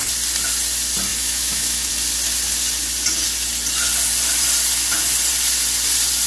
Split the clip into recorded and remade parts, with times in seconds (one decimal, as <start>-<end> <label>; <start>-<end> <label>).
0.0-1.1 recorded; 1.1-1.9 remade; 1.9-6.3 recorded

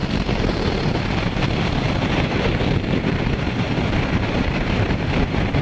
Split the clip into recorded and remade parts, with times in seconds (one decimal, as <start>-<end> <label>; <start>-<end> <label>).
0.0-5.6 remade

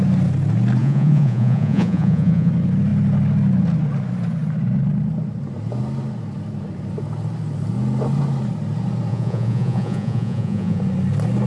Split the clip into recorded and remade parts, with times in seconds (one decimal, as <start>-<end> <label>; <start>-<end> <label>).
0.0-0.8 recorded; 0.8-2.5 remade; 2.5-9.1 recorded; 9.1-10.8 remade; 10.8-11.5 recorded

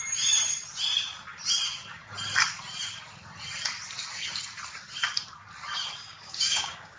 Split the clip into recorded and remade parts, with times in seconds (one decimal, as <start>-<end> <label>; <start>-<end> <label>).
0.0-6.0 recorded; 6.0-7.0 remade

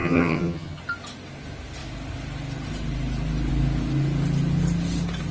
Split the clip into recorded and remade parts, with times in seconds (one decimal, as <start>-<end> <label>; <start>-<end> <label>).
0.0-0.8 remade; 0.8-5.3 recorded

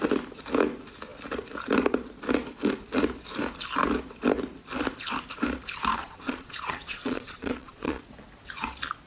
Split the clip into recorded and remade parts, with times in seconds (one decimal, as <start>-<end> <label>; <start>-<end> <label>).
0.0-5.9 recorded; 5.9-8.0 remade; 8.0-9.1 recorded

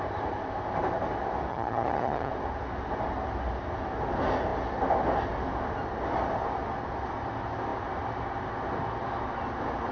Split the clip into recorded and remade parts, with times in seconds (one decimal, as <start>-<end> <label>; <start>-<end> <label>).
0.0-1.5 recorded; 1.5-2.3 remade; 2.3-9.9 recorded